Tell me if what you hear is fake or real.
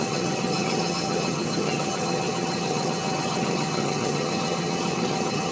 fake